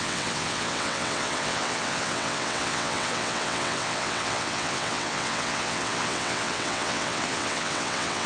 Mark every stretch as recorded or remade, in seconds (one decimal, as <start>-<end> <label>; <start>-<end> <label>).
0.0-8.3 remade